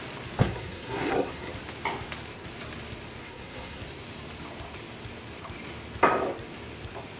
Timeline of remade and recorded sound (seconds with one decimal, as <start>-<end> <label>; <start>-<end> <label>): 0.0-0.4 recorded; 0.4-1.5 remade; 1.5-3.2 recorded; 3.2-3.8 remade; 3.8-7.2 recorded